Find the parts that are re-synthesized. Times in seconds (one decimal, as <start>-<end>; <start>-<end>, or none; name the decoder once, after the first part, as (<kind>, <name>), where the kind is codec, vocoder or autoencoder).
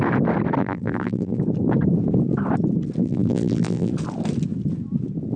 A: 0.6-1.4 (vocoder, BigVGAN v2); 3.0-3.9